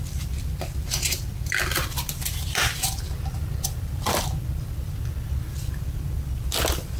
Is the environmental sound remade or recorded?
remade